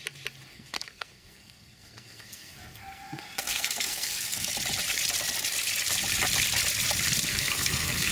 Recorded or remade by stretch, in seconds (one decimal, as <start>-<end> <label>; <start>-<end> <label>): 0.0-0.5 recorded; 0.5-4.5 remade; 4.5-7.3 recorded; 7.3-8.1 remade